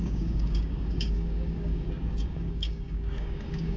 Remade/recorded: remade